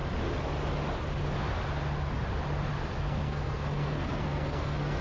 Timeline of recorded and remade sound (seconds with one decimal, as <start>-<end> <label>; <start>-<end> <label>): 0.0-3.0 recorded; 3.0-5.0 remade